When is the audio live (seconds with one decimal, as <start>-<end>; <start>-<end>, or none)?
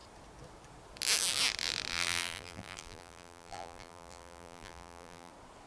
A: 0.0-1.9; 5.3-5.7